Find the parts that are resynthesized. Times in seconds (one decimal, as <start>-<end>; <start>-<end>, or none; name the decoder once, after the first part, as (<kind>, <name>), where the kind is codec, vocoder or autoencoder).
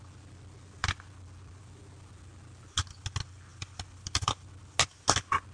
0.8-1.6 (vocoder, BigVGAN v2); 3.5-4.5